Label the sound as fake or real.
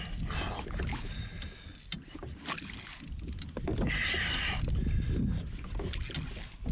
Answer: real